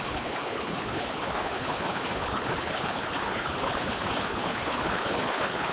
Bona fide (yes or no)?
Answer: no